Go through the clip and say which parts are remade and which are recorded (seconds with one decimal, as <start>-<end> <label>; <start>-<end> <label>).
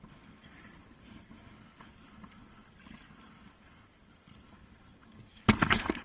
0.0-6.0 recorded